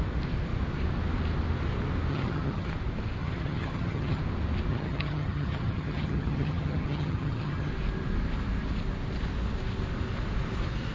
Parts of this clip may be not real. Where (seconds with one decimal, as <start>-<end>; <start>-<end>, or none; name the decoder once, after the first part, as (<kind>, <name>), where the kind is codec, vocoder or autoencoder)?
2.1-2.7 (vocoder, HiFi-GAN); 3.2-4.2; 4.7-7.7